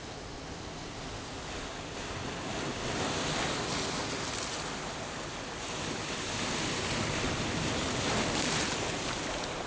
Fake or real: real